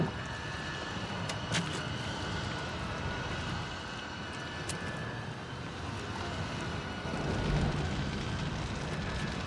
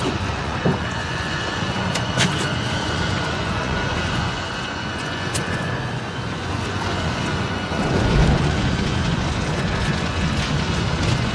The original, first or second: first